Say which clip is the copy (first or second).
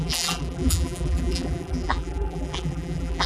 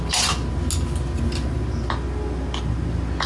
first